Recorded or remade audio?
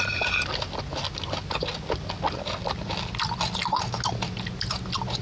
recorded